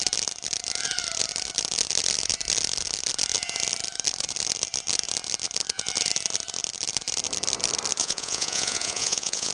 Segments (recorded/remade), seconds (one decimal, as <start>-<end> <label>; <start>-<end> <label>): 0.0-8.0 recorded; 8.0-9.5 remade